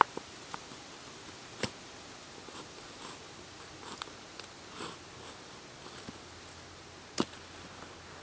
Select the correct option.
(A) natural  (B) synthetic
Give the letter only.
A